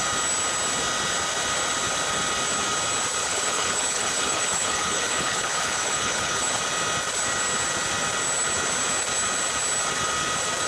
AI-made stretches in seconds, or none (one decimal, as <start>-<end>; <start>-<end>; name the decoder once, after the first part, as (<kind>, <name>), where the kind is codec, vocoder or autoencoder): 3.2-6.6 (codec, HILCodec)